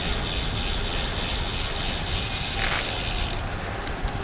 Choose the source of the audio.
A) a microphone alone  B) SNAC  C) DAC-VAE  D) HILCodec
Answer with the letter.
A